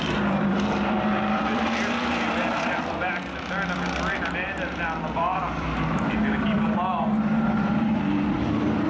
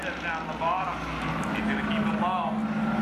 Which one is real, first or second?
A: second